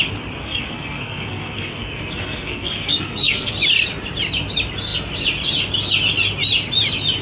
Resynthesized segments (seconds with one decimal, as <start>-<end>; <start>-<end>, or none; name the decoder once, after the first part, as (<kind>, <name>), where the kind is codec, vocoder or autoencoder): 0.4-3.5 (codec, SNAC)